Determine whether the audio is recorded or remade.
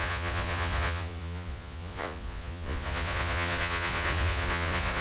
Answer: remade